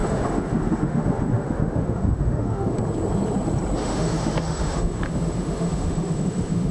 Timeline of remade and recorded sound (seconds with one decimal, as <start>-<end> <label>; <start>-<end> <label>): 0.0-2.8 remade; 2.8-3.8 recorded; 3.8-6.7 remade

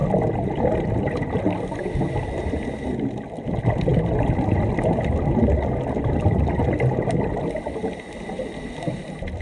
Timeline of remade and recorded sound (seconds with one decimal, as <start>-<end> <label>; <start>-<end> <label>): 0.0-9.4 recorded

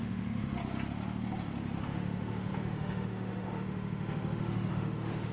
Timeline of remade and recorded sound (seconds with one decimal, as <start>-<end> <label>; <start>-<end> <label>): 0.0-0.6 remade; 0.6-1.8 recorded; 1.8-5.3 remade

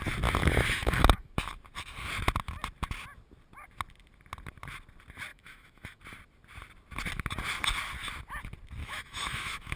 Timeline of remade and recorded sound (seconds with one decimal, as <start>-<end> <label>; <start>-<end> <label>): 0.0-0.4 recorded; 0.4-1.3 remade; 1.3-5.3 recorded; 5.3-6.0 remade; 6.0-8.8 recorded; 8.8-9.8 remade

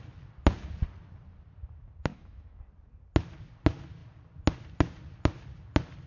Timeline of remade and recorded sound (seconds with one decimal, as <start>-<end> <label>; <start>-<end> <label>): 0.0-2.1 recorded; 2.1-2.6 remade; 2.6-6.1 recorded

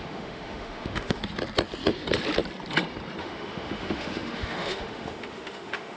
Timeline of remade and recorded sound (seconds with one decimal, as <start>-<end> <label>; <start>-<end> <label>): 0.0-1.2 remade; 1.2-3.2 recorded; 3.2-6.0 remade

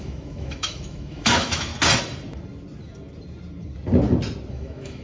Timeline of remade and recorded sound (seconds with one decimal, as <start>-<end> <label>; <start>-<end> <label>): 0.0-1.7 remade; 1.7-4.5 recorded; 4.5-5.0 remade